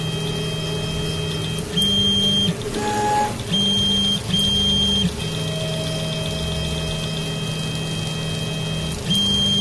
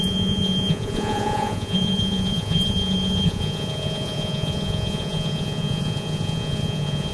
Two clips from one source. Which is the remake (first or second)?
second